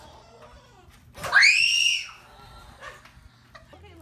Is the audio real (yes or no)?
yes